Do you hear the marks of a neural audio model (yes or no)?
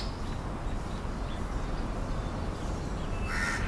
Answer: no